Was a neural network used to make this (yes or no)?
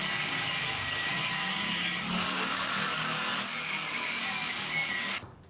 yes